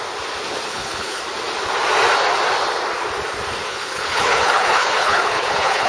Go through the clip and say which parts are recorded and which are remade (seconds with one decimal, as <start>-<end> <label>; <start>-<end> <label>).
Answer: 0.0-0.7 recorded; 0.7-1.2 remade; 1.2-3.7 recorded; 3.7-5.9 remade